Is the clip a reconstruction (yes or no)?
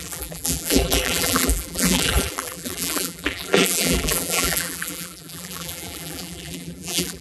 yes